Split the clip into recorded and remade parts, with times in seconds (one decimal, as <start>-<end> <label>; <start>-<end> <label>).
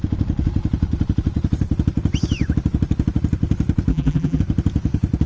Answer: 0.0-3.9 recorded; 3.9-4.4 remade; 4.4-5.3 recorded